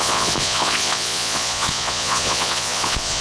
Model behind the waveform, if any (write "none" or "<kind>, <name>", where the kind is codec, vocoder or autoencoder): vocoder, Vocos